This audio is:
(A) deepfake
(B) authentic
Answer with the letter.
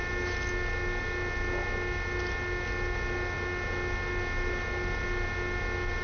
B